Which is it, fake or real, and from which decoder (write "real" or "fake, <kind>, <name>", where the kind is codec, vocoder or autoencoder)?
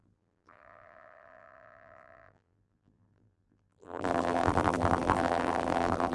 fake, vocoder, BigVGAN v2